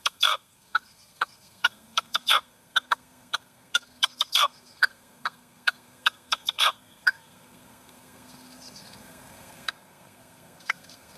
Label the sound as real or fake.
fake